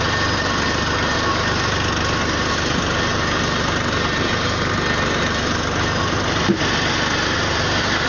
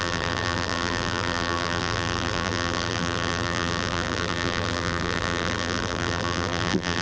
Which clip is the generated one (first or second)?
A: second